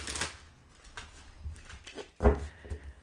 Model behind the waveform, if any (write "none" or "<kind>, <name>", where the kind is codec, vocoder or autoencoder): none